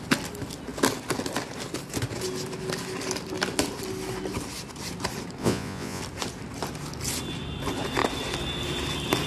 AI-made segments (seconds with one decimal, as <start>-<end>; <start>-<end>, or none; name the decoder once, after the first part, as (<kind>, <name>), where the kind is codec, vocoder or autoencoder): 5.4-6.0 (vocoder, Vocos)